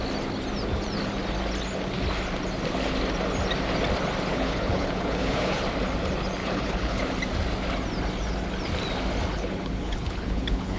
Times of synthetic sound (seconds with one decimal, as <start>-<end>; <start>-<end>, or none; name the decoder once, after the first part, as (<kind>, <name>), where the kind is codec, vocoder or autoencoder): 4.3-5.6 (codec, HILCodec); 6.4-7.0; 9.3-10.8